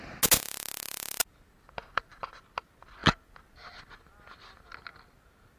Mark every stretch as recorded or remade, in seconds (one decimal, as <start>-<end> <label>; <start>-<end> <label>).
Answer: 0.0-5.6 recorded